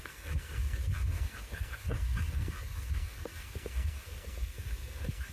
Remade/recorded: remade